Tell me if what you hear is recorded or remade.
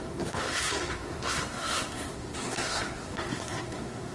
remade